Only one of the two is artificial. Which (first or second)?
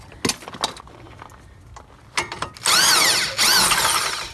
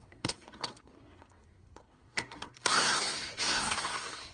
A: second